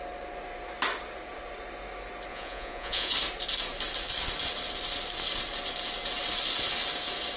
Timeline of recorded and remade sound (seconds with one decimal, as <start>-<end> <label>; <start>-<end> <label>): 0.0-2.3 recorded; 2.3-3.1 remade; 3.1-7.4 recorded